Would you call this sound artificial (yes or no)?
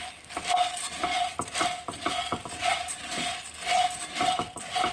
no